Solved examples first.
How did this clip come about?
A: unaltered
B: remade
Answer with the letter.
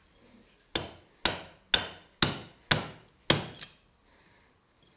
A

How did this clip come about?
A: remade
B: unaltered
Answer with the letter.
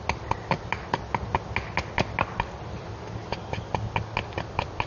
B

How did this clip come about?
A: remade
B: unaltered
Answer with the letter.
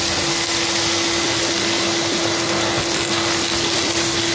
B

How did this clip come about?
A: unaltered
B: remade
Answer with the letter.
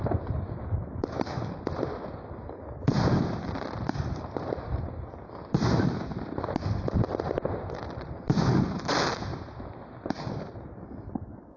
A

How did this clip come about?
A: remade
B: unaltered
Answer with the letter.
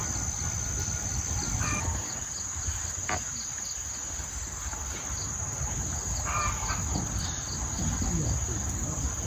B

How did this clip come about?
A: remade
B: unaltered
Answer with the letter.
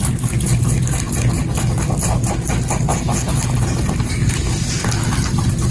B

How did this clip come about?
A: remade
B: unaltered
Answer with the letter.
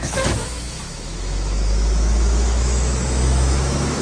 A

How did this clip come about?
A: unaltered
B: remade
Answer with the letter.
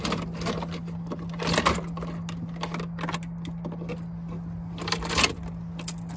A